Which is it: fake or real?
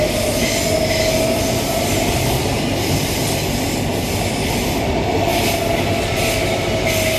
real